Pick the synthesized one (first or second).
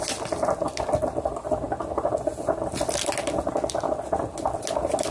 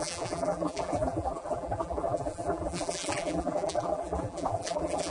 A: second